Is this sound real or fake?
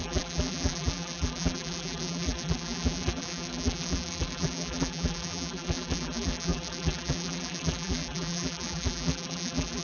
fake